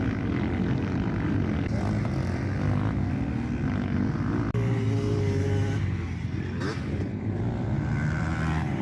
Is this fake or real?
real